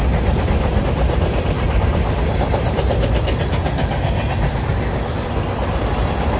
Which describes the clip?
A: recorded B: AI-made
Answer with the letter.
A